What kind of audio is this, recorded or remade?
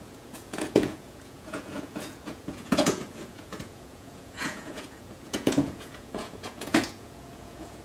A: remade